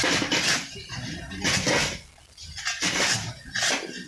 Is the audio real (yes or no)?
yes